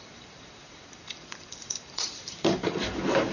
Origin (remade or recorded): remade